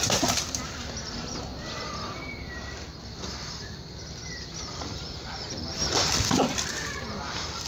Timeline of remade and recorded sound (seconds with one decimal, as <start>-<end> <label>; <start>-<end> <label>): 0.0-1.5 remade; 1.5-4.4 recorded; 4.4-5.8 remade; 5.8-6.3 recorded; 6.3-7.7 remade